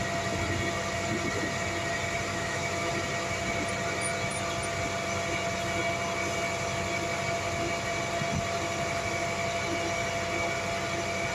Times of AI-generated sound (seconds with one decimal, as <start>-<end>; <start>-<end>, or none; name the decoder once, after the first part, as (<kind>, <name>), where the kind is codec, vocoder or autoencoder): 2.3-2.9 (autoencoder, DAC-VAE)